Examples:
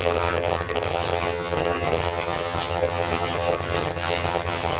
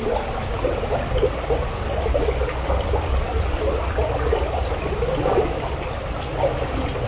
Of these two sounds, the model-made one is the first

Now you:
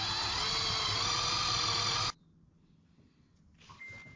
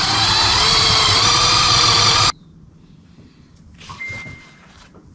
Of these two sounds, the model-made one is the second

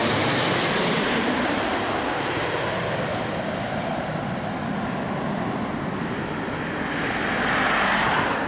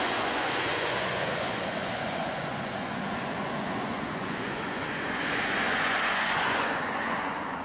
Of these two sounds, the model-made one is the second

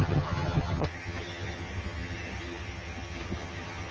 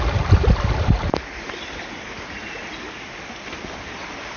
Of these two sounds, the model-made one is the first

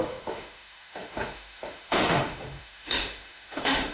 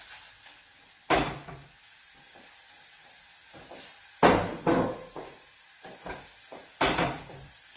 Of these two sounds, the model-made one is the first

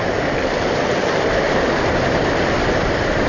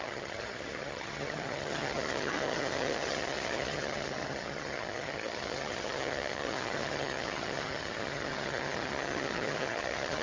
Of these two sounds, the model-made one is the second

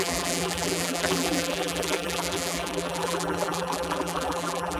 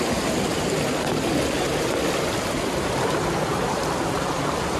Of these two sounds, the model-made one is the first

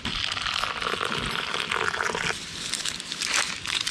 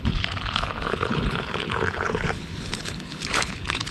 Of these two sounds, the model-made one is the second